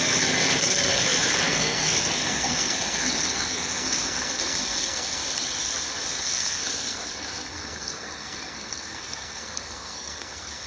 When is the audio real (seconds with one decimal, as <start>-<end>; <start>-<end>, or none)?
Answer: 5.2-6.2